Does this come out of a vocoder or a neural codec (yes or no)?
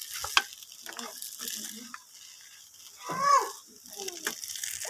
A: no